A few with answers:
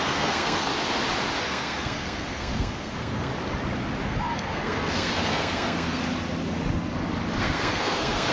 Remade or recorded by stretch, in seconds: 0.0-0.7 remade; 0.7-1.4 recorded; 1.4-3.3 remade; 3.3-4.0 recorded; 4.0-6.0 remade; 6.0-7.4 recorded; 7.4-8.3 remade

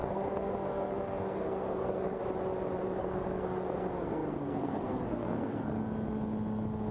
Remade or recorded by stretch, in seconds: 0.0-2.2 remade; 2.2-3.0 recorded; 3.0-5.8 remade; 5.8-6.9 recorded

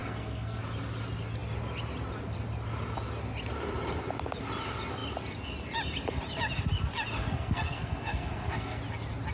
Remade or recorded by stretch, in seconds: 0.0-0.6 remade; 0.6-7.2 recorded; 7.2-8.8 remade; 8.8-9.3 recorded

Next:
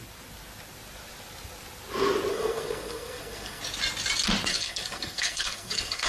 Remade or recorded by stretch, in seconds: 0.0-2.3 recorded; 2.3-3.6 remade; 3.6-4.5 recorded; 4.5-6.1 remade